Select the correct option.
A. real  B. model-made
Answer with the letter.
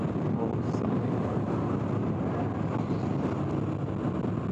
A